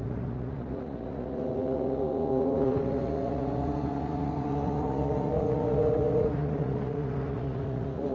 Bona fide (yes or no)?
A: no